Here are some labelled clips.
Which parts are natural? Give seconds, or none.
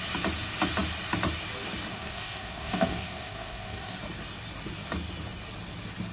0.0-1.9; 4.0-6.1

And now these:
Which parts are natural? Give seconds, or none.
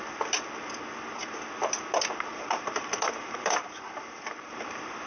0.0-2.3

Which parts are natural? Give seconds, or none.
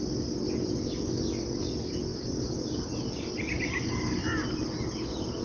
0.0-5.4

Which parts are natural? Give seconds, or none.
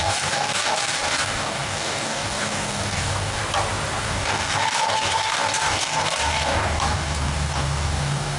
3.4-4.0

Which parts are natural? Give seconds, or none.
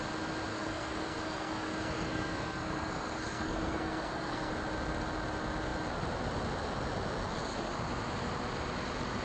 0.0-0.5; 4.5-9.2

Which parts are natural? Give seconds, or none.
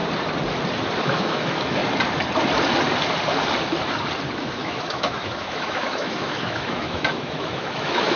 0.0-1.0; 1.8-4.4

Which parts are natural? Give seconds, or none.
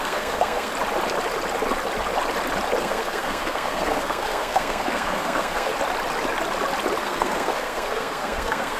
0.7-2.8; 5.7-7.0